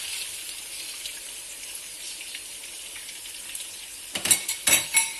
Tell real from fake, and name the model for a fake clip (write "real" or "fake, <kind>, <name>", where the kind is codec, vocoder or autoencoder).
real